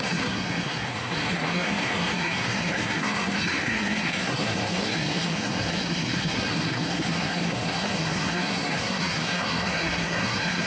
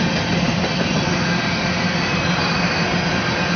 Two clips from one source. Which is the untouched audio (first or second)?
second